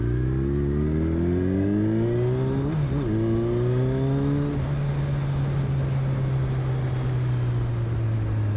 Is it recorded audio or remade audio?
recorded